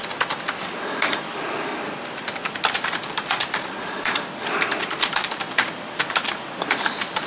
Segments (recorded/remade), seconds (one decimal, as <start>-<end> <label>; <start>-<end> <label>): 0.0-2.4 recorded; 2.4-6.0 remade; 6.0-7.3 recorded